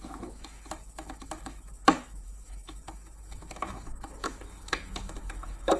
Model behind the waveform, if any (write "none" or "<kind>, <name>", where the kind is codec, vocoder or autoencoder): autoencoder, DAC-VAE